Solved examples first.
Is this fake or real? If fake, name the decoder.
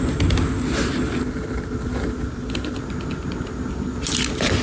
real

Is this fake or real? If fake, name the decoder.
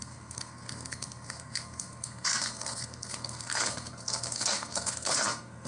fake, codec, SNAC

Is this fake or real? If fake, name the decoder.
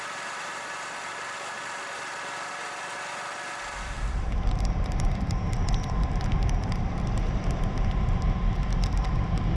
fake, vocoder, BigVGAN v2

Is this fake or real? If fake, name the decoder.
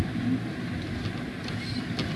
real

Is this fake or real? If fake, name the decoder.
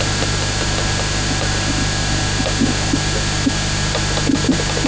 real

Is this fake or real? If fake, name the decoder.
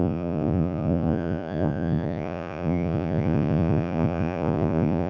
fake, vocoder, Vocos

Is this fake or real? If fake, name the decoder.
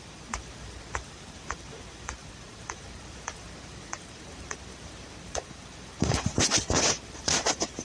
fake, vocoder, BigVGAN v2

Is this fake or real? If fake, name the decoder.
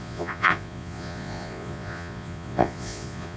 fake, vocoder, Vocos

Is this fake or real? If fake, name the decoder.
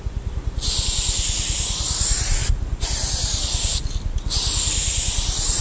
real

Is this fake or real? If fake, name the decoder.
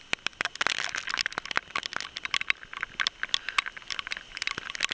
real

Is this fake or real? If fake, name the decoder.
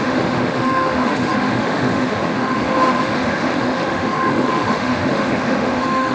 fake, autoencoder, DAC-VAE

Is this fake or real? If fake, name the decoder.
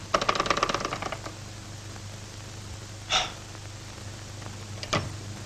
real